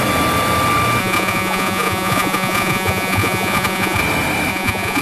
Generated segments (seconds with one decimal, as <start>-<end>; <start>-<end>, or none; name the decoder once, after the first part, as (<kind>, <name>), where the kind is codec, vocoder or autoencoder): 1.0-4.0 (vocoder, Vocos); 4.5-5.0